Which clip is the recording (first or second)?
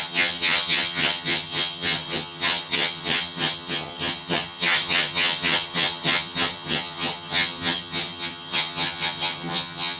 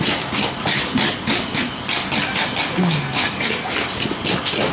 second